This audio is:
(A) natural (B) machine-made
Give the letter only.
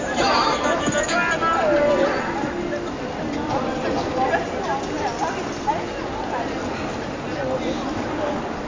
A